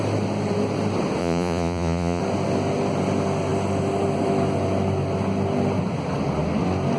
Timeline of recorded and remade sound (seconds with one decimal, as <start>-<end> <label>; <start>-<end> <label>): 0.0-1.2 recorded; 1.2-2.2 remade; 2.2-7.0 recorded